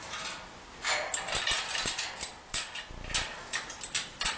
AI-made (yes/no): no